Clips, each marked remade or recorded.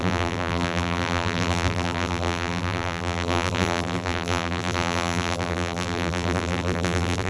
remade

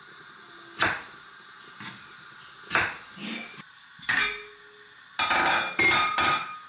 recorded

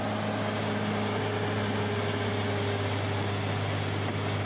recorded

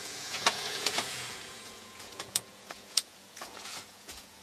remade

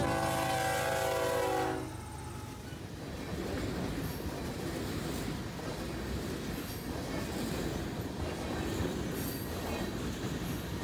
recorded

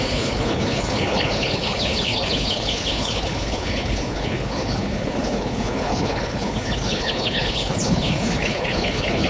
remade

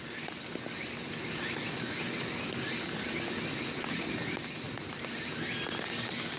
recorded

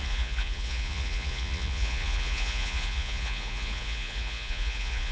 remade